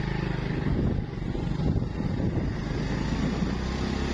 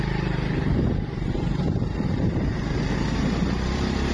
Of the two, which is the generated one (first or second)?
second